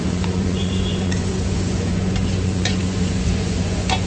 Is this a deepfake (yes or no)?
yes